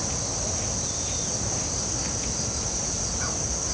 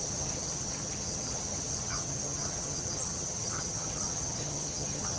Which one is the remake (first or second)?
second